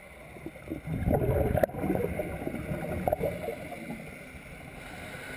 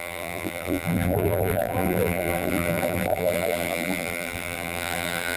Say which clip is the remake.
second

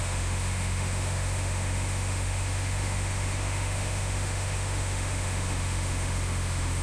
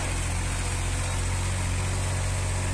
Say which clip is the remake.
first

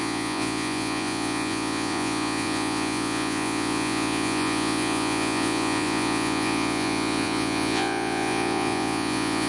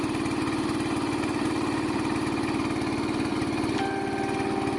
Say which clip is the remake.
first